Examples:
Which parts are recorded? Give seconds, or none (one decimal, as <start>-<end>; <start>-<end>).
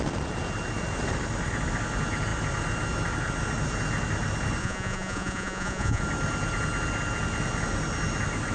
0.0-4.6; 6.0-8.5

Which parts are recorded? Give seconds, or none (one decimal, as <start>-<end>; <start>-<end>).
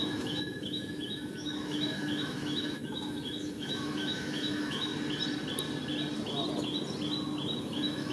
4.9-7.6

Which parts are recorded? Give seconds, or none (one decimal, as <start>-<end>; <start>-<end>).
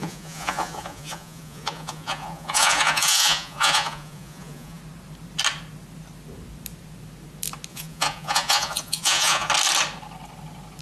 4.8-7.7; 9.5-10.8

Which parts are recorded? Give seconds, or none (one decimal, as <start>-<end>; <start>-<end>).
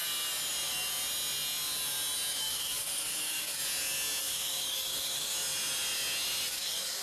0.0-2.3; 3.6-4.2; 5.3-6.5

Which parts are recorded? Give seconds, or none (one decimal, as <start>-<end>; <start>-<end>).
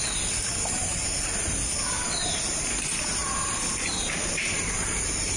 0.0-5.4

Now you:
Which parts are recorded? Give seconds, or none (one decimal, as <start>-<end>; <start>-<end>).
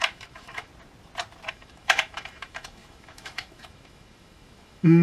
0.7-1.5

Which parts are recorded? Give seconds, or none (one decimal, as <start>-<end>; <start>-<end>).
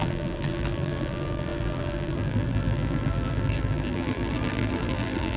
none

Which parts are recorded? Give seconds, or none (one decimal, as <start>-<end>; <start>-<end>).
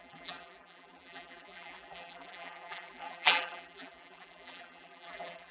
none